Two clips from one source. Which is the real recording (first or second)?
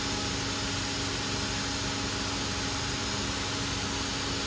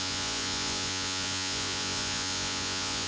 first